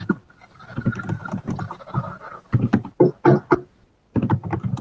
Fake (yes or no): no